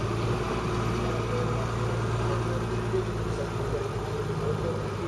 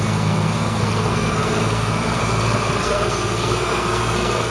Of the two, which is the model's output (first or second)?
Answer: second